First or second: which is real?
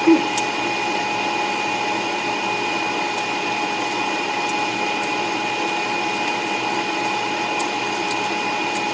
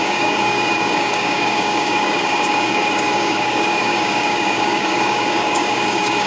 first